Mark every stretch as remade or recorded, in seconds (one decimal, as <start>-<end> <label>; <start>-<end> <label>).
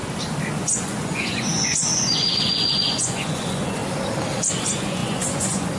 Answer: 0.0-0.6 recorded; 0.6-3.8 remade; 3.8-4.5 recorded; 4.5-5.8 remade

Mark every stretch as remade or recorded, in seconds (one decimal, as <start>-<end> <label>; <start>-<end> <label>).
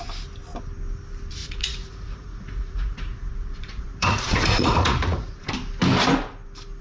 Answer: 0.0-1.4 recorded; 1.4-5.5 remade; 5.5-6.8 recorded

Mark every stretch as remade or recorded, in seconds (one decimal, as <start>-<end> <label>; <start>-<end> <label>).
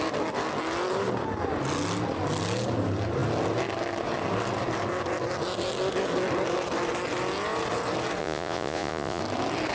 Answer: 0.0-8.2 recorded; 8.2-9.2 remade; 9.2-9.7 recorded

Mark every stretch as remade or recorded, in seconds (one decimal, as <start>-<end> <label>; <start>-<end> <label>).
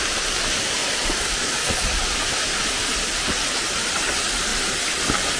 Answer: 0.0-0.8 recorded; 0.8-2.0 remade; 2.0-5.4 recorded